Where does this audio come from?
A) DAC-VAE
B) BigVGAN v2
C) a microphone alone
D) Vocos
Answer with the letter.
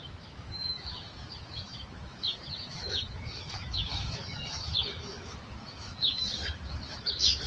A